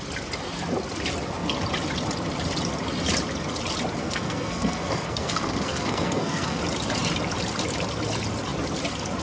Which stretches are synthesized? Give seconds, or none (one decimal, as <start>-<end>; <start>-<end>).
4.0-6.6